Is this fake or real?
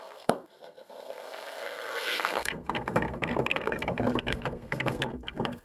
fake